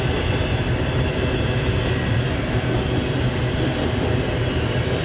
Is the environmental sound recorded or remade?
recorded